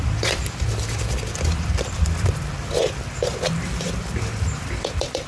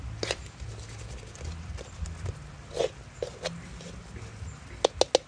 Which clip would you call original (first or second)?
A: second